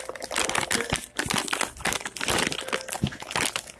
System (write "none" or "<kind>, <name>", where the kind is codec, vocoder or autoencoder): none